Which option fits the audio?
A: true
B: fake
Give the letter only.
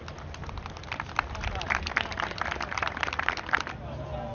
A